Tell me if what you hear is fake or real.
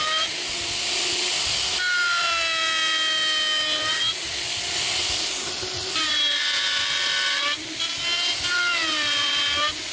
real